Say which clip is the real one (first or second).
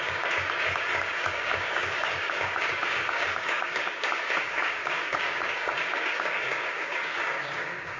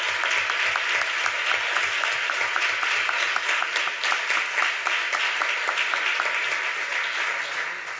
second